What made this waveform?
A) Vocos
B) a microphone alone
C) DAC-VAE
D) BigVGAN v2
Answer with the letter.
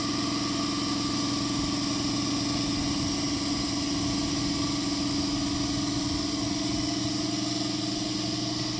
B